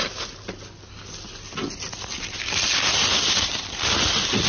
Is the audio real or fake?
real